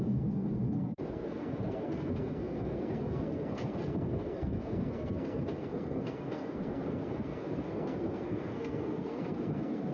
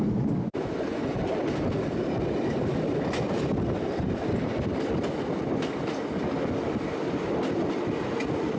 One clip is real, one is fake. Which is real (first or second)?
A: second